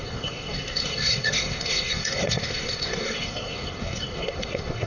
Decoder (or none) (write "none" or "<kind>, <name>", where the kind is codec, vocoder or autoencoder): codec, SNAC